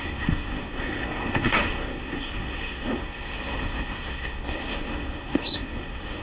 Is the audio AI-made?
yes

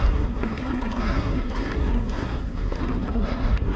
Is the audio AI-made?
yes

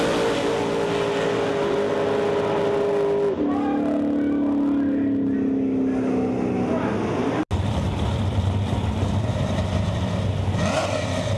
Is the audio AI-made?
no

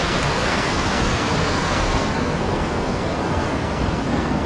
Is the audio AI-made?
yes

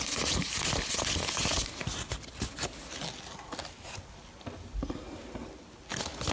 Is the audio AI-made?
no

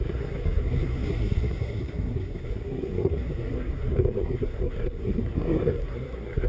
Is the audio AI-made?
yes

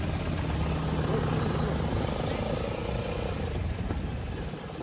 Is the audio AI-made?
no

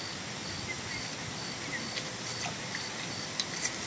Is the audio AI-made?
no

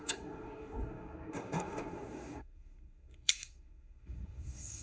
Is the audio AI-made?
yes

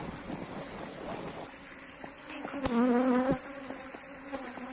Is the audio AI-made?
no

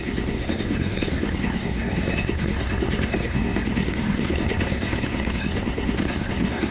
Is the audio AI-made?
yes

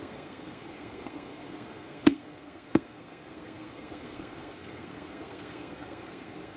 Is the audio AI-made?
yes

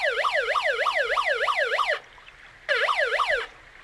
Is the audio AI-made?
no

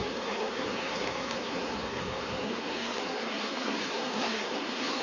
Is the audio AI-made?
yes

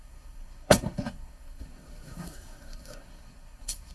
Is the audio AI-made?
yes